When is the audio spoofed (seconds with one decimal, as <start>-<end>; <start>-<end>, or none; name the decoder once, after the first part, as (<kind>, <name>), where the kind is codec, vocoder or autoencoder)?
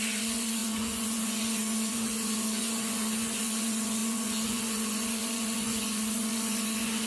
0.0-7.1 (vocoder, Vocos)